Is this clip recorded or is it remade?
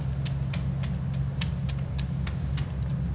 recorded